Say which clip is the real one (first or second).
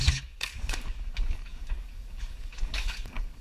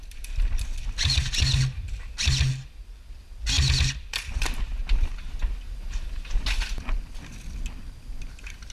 second